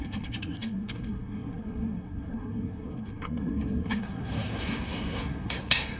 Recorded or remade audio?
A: remade